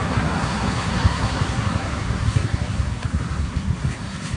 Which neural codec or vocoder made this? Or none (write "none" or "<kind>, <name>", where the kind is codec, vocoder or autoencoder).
codec, SNAC